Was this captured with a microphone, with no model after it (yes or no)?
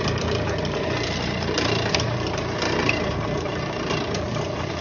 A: no